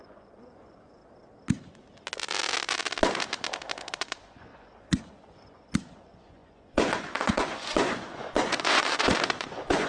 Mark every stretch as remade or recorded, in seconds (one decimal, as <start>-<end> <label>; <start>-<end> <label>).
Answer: 0.0-1.0 remade; 1.0-4.0 recorded; 4.0-9.9 remade